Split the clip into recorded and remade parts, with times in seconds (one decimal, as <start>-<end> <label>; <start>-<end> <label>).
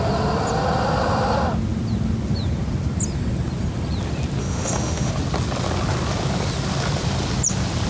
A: 0.0-4.4 recorded; 4.4-5.1 remade; 5.1-7.9 recorded